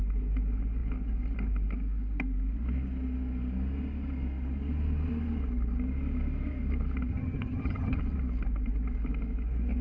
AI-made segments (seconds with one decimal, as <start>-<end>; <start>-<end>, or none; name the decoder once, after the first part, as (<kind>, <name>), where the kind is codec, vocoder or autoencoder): 7.1-8.0 (vocoder, HiFi-GAN)